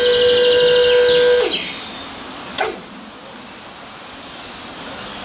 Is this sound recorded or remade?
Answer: recorded